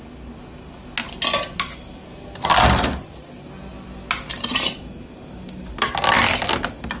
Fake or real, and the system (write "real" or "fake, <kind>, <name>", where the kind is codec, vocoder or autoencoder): real